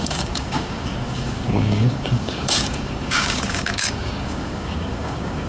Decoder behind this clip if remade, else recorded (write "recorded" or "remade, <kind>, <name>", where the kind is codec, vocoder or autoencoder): remade, codec, DAC